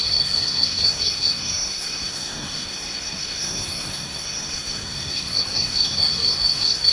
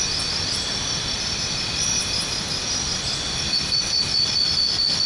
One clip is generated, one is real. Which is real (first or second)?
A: second